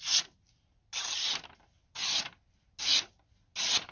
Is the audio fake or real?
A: real